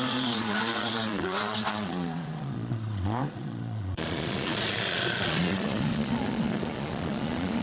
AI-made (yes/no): yes